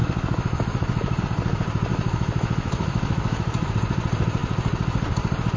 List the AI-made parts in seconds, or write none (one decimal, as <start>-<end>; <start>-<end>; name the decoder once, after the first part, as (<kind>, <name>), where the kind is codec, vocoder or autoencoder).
0.0-1.2 (autoencoder, DAC-VAE); 1.9-3.7